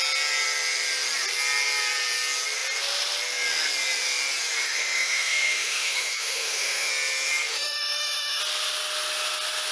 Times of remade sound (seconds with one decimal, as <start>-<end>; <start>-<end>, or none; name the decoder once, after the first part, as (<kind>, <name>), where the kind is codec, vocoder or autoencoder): 4.6-6.9 (autoencoder, DAC-VAE); 7.5-8.4